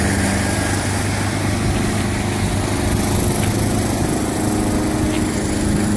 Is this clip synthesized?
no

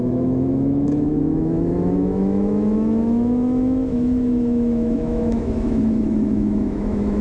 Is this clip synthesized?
yes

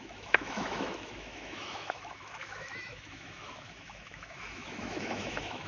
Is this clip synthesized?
yes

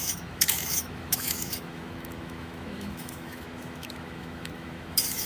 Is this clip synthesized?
yes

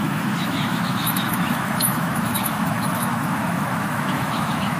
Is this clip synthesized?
yes